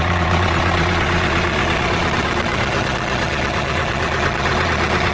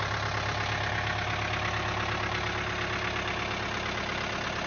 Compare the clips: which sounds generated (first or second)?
first